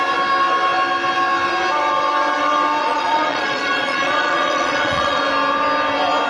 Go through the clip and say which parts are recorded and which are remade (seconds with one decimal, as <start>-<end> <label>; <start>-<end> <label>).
0.0-2.8 recorded; 2.8-5.2 remade; 5.2-6.3 recorded